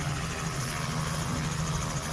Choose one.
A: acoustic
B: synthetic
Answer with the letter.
B